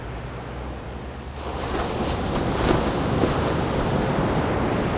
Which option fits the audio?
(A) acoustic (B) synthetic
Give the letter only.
A